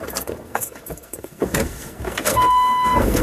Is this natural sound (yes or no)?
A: no